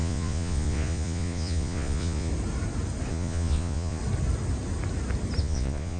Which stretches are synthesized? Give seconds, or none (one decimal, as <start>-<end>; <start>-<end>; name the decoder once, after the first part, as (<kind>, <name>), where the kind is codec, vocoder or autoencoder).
0.0-2.3 (vocoder, Vocos); 3.1-4.0; 5.4-6.0